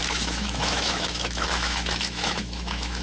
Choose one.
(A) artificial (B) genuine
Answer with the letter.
A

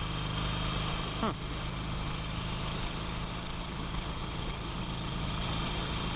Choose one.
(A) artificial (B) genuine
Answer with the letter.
B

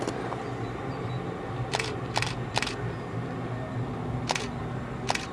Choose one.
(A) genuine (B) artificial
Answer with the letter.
A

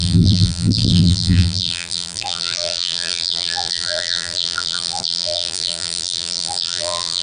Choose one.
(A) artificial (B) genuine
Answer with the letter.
A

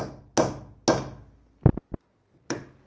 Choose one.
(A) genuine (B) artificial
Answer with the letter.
A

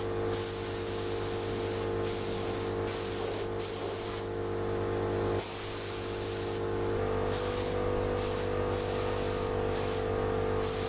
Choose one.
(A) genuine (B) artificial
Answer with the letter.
A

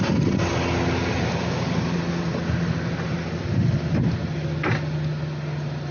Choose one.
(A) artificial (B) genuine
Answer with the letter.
B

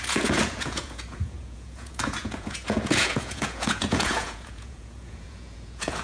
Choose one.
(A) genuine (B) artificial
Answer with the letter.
B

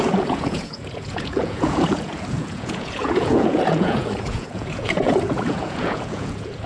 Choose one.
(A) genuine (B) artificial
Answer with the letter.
B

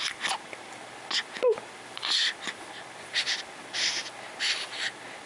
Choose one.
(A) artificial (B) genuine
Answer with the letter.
B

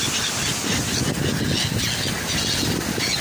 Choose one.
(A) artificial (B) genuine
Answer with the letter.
B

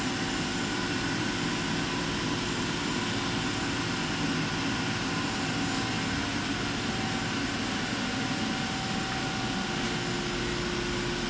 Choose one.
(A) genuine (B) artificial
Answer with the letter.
A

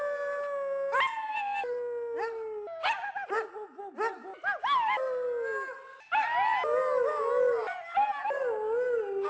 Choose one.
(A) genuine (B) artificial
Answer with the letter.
A